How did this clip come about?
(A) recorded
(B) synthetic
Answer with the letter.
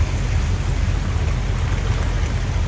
A